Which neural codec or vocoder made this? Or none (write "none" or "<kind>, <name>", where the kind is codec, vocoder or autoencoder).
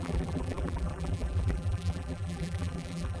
vocoder, BigVGAN v2